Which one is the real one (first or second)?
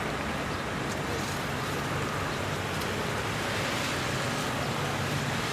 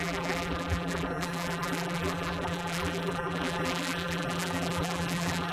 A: first